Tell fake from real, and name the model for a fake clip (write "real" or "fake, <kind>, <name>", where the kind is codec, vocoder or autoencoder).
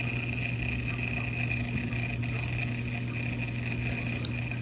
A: real